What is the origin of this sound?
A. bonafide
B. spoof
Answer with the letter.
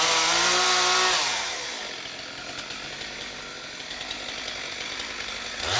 A